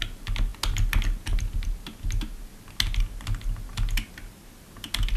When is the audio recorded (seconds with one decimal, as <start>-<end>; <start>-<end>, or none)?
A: 0.0-5.2